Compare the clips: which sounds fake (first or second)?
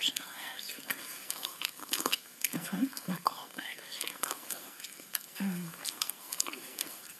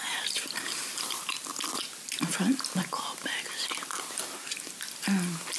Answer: first